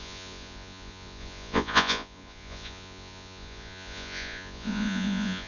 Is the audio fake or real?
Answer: fake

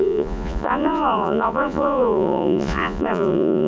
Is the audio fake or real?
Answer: fake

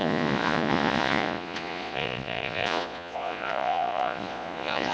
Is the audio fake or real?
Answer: fake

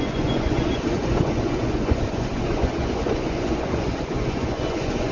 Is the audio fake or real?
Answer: fake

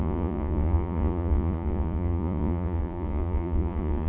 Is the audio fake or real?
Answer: fake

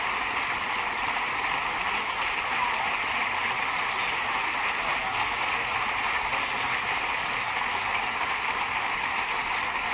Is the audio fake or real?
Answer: real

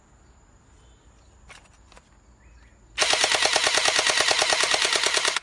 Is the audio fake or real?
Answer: real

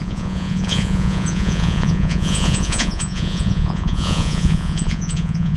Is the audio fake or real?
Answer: fake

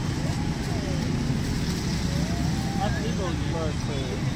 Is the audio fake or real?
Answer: real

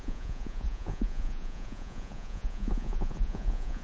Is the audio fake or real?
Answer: fake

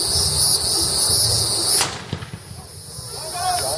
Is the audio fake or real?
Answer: real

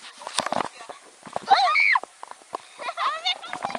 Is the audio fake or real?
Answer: real